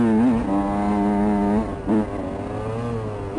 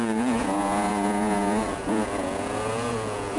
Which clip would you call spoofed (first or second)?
second